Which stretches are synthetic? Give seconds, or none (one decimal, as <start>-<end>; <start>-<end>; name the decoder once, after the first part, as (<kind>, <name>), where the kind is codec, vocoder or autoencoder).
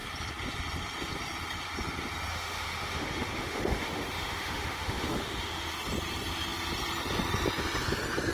2.3-5.7 (autoencoder, DAC-VAE)